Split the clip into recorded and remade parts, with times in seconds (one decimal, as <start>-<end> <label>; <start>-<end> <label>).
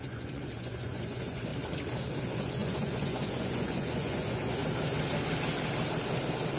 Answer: 0.0-1.5 remade; 1.5-2.2 recorded; 2.2-4.6 remade; 4.6-6.6 recorded